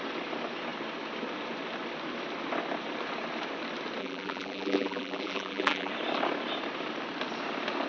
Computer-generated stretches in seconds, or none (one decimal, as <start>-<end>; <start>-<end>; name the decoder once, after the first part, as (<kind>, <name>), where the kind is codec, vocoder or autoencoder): 4.0-5.9 (vocoder, BigVGAN v2)